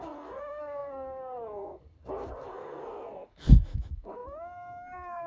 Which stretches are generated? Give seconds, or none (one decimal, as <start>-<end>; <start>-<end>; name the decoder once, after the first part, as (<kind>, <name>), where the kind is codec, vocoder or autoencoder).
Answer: 0.0-5.3 (codec, SNAC)